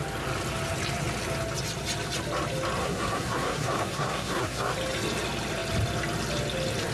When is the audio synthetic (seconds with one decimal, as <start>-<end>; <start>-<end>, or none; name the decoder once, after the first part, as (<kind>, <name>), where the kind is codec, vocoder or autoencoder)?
2.8-4.7 (codec, SNAC)